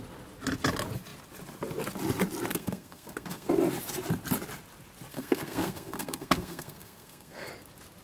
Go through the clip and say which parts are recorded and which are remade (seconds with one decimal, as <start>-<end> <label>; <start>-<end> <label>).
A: 0.0-2.5 recorded; 2.5-3.5 remade; 3.5-5.1 recorded; 5.1-7.5 remade; 7.5-8.0 recorded